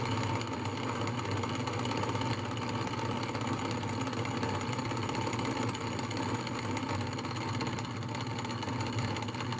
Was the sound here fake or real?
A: real